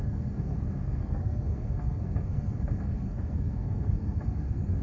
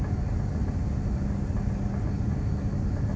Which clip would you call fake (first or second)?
first